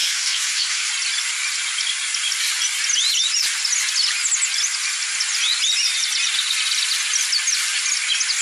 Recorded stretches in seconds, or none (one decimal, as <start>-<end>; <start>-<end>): 0.9-8.4